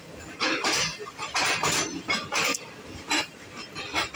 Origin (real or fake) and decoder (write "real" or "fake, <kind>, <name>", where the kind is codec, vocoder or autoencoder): real